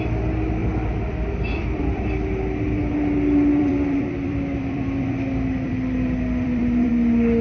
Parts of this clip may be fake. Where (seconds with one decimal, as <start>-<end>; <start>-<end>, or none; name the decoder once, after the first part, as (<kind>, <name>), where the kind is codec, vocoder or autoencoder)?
0.6-2.9 (vocoder, BigVGAN v2); 3.5-6.9